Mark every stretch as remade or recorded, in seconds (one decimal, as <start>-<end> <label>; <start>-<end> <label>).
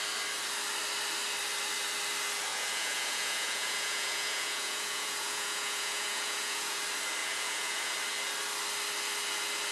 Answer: 0.0-2.5 recorded; 2.5-6.8 remade; 6.8-7.2 recorded; 7.2-7.9 remade; 7.9-9.7 recorded